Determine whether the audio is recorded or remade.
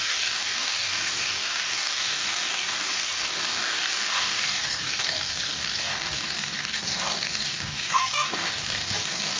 remade